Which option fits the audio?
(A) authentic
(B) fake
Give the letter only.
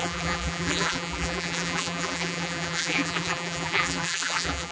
B